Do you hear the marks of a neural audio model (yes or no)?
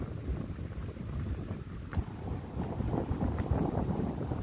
no